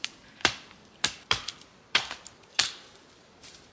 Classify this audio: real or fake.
fake